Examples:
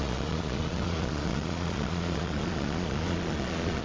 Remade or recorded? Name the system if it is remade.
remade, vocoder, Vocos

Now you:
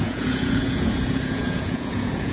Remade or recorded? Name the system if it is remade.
remade, vocoder, Vocos